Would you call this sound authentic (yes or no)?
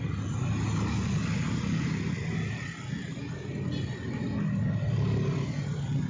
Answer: yes